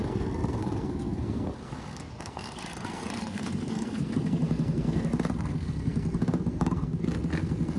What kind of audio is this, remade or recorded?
remade